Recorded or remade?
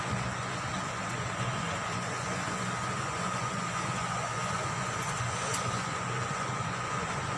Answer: remade